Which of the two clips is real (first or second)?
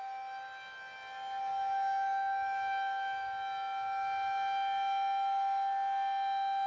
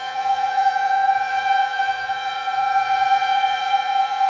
first